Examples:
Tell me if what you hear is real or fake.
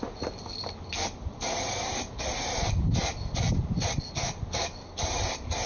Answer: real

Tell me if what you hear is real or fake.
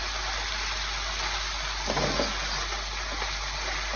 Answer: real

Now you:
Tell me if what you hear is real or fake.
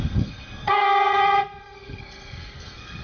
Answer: fake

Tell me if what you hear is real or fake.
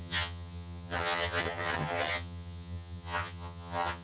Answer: fake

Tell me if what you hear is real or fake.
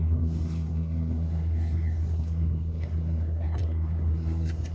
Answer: fake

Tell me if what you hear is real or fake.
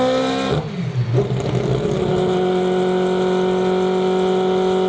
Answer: real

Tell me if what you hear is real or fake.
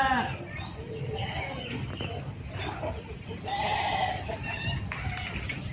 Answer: real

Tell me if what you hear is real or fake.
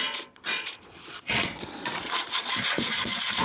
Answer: fake